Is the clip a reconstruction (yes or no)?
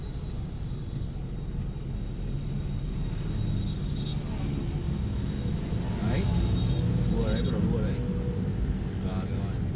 no